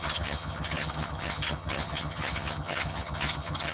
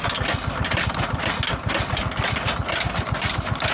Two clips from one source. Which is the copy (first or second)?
first